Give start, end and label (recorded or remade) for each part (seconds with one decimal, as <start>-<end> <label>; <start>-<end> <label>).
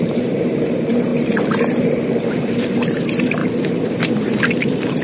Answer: 0.0-5.0 remade